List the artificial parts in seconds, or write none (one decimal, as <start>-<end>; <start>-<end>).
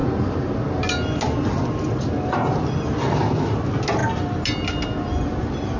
none